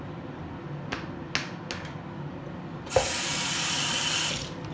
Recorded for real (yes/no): yes